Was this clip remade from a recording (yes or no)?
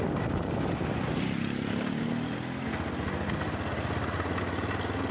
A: no